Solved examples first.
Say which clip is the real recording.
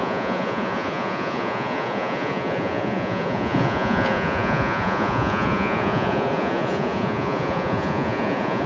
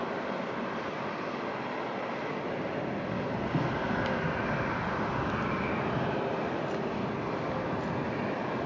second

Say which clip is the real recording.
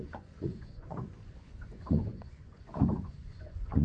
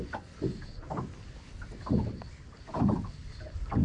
second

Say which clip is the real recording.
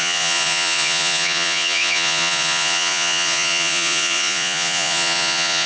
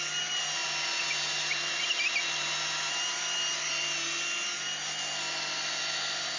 second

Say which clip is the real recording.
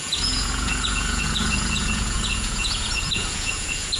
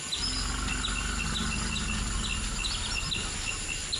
second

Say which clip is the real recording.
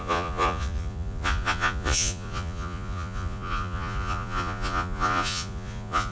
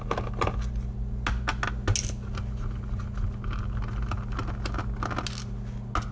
second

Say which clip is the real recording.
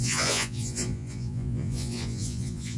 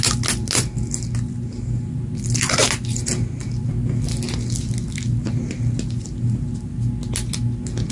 second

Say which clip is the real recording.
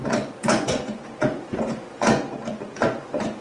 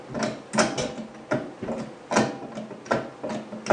second